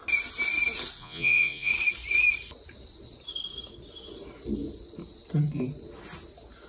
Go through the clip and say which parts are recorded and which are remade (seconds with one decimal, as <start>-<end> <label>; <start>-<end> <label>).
0.0-1.0 recorded; 1.0-1.7 remade; 1.7-6.7 recorded